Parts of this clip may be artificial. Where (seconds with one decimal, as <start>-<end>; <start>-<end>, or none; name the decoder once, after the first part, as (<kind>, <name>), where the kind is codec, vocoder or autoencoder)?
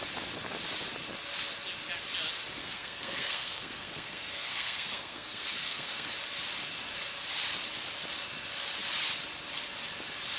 2.6-6.1 (codec, SNAC)